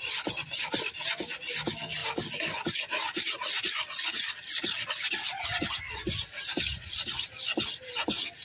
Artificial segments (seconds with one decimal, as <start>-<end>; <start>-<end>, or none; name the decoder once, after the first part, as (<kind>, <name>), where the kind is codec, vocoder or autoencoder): none